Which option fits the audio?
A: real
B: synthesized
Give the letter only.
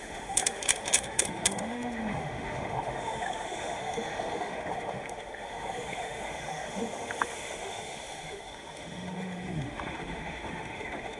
B